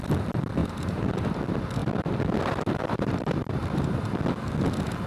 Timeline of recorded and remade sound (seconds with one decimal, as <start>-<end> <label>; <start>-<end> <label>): 0.0-0.6 recorded; 0.6-1.4 remade; 1.4-1.8 recorded; 1.8-4.2 remade; 4.2-5.1 recorded